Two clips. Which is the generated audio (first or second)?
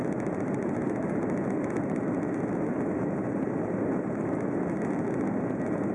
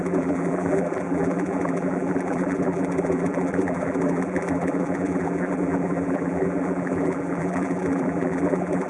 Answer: second